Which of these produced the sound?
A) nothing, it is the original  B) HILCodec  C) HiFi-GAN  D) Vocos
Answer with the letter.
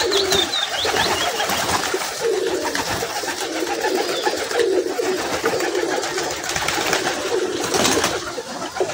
A